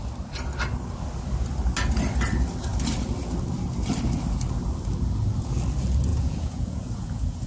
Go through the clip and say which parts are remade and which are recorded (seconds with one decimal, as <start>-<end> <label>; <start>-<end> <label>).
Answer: 0.0-6.1 recorded; 6.1-7.5 remade

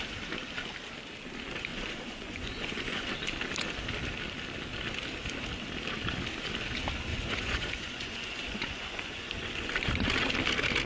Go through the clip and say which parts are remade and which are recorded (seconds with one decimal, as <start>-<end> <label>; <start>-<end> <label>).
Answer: 0.0-1.7 recorded; 1.7-3.1 remade; 3.1-7.1 recorded; 7.1-9.7 remade; 9.7-10.9 recorded

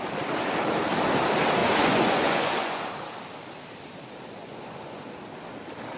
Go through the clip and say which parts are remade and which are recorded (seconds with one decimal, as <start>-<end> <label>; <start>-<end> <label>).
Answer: 0.0-1.6 recorded; 1.6-2.9 remade; 2.9-4.4 recorded; 4.4-5.0 remade; 5.0-6.0 recorded

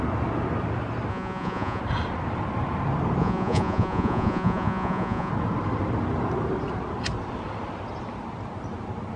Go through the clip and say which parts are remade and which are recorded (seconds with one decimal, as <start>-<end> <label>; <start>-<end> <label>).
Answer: 0.0-1.1 recorded; 1.1-1.8 remade; 1.8-3.2 recorded; 3.2-5.3 remade; 5.3-9.2 recorded

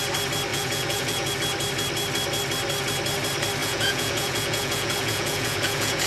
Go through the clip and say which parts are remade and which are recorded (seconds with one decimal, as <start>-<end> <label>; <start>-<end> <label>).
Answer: 0.0-0.5 recorded; 0.5-1.3 remade; 1.3-3.6 recorded; 3.6-6.1 remade

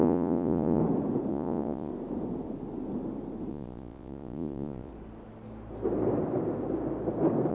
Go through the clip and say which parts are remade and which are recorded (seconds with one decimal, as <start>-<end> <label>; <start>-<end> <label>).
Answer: 0.0-0.8 remade; 0.8-1.3 recorded; 1.3-1.9 remade; 1.9-3.5 recorded; 3.5-4.9 remade; 4.9-7.5 recorded

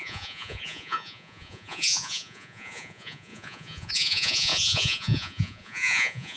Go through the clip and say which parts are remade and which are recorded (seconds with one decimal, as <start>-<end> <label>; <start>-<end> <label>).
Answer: 0.0-6.4 remade